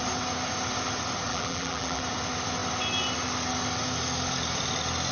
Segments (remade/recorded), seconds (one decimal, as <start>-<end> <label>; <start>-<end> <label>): 0.0-1.3 recorded; 1.3-2.0 remade; 2.0-5.1 recorded